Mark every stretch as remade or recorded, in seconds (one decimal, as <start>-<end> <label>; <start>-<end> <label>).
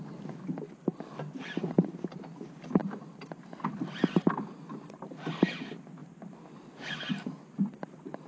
0.0-8.3 recorded